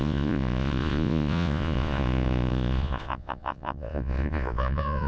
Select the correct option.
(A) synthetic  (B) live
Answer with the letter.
A